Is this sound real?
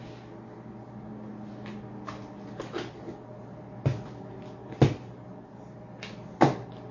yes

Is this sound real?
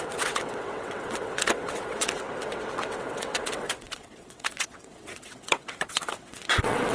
no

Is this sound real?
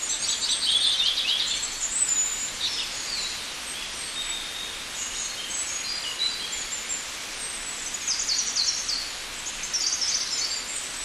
yes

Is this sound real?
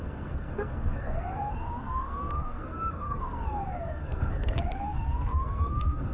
no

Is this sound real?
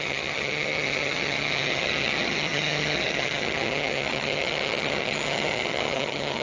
no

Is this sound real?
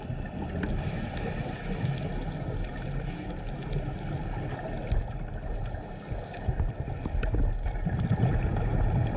yes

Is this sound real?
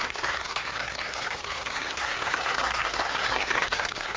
no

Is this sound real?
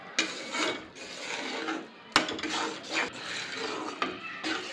yes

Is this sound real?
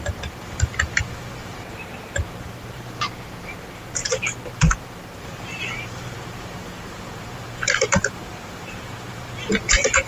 no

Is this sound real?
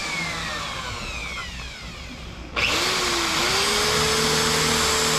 yes